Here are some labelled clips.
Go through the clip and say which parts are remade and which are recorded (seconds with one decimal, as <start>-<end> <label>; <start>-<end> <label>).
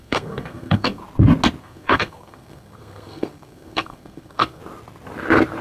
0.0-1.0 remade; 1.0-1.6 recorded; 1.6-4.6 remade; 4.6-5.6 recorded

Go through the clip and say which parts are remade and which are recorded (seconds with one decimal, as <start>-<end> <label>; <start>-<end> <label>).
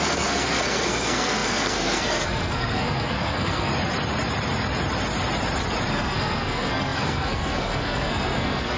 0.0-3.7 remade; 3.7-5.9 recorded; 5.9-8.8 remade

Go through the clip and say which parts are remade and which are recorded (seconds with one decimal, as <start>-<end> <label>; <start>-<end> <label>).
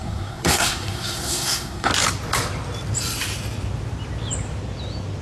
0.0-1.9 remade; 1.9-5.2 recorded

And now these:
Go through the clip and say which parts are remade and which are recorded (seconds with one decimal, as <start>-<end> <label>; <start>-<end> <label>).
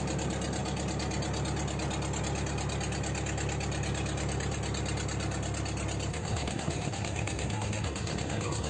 0.0-6.1 recorded; 6.1-8.7 remade